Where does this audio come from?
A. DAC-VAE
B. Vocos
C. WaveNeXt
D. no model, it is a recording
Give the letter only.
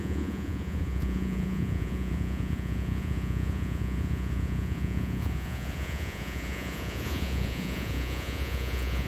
B